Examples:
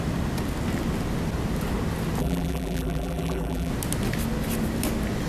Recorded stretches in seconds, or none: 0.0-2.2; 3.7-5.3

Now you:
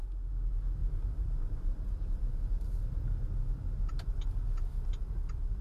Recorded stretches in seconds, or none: 0.0-0.8; 3.1-5.6

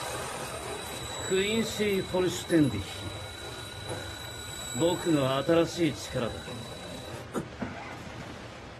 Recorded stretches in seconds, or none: 0.0-8.8